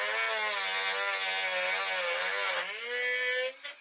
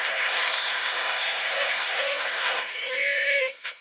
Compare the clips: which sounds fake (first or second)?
second